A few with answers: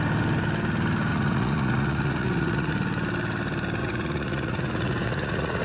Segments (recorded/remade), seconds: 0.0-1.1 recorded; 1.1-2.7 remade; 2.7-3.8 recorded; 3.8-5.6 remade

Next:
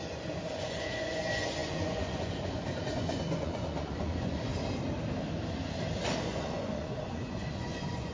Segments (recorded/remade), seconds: 0.0-4.5 remade; 4.5-6.2 recorded; 6.2-8.1 remade

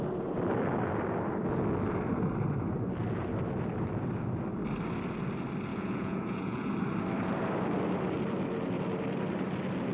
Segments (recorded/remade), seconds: 0.0-5.7 recorded; 5.7-6.7 remade; 6.7-9.9 recorded

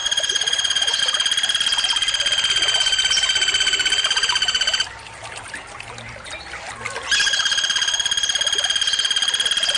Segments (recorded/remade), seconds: 0.0-1.0 remade; 1.0-9.8 recorded

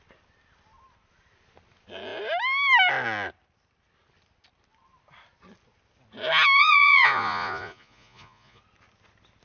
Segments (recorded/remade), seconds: 0.0-6.6 recorded; 6.6-8.6 remade; 8.6-9.4 recorded

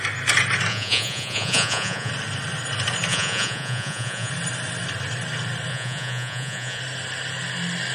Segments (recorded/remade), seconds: 0.0-0.7 recorded; 0.7-2.1 remade; 2.1-3.1 recorded; 3.1-4.3 remade; 4.3-5.7 recorded; 5.7-6.8 remade; 6.8-7.9 recorded

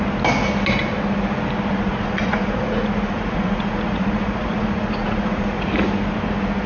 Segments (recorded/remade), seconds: 0.0-1.7 recorded; 1.7-5.7 remade; 5.7-6.7 recorded

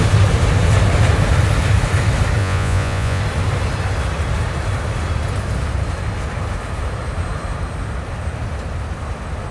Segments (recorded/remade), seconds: 0.0-2.4 recorded; 2.4-3.2 remade; 3.2-9.5 recorded